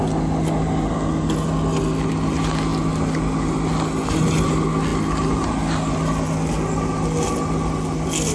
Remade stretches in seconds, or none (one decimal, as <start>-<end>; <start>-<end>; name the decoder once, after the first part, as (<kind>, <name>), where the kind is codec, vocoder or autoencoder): none